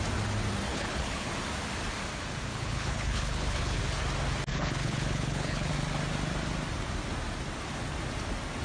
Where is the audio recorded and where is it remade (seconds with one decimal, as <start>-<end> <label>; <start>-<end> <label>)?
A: 0.0-0.7 recorded; 0.7-1.3 remade; 1.3-2.5 recorded; 2.5-3.8 remade; 3.8-4.5 recorded; 4.5-5.7 remade; 5.7-8.6 recorded